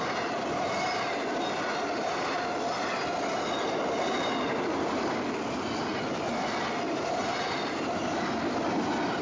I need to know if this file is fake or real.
real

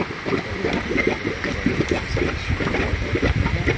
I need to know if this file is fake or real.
real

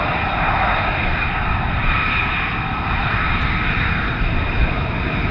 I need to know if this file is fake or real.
real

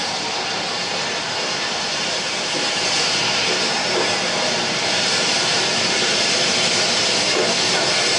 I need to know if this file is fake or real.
fake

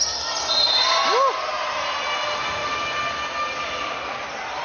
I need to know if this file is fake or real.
real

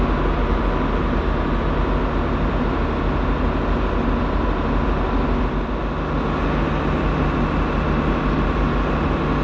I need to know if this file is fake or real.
real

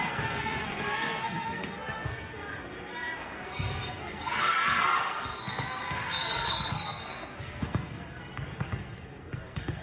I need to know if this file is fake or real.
fake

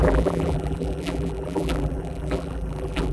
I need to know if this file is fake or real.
fake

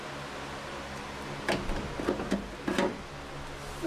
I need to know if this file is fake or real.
real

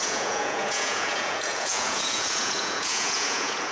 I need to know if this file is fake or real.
fake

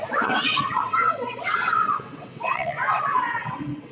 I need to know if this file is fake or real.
fake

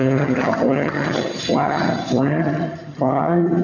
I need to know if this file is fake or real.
fake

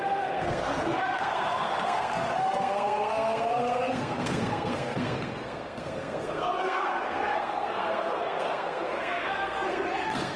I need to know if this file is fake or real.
fake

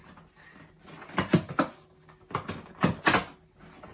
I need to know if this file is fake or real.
real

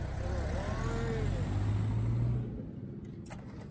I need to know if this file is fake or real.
real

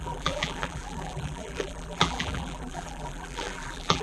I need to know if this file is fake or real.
fake